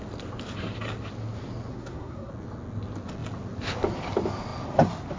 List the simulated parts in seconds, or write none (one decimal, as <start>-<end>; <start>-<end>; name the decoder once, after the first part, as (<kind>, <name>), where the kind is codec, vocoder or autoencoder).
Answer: 1.7-2.3 (codec, SNAC)